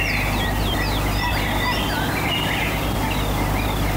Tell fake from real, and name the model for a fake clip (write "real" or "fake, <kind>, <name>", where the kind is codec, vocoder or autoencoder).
real